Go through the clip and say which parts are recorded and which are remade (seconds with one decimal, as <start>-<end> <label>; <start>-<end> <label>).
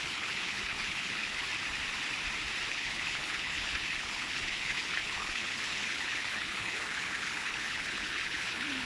0.0-1.5 remade; 1.5-2.7 recorded; 2.7-8.9 remade